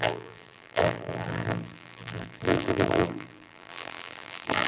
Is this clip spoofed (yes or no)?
yes